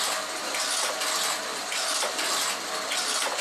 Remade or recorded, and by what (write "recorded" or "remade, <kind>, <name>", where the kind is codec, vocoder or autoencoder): recorded